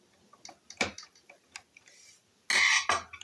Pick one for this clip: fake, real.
real